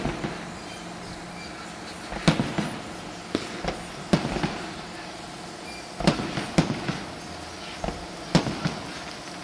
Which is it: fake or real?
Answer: real